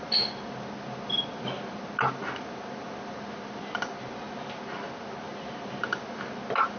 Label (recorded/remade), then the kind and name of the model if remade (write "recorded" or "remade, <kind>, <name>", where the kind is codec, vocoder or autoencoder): recorded